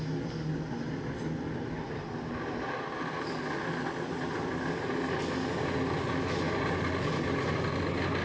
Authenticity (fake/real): real